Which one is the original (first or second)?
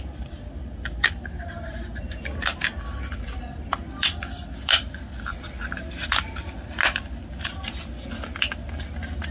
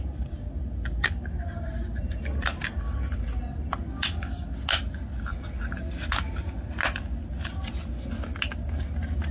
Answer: second